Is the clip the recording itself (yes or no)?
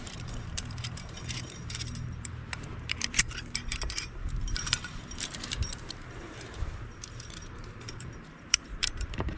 no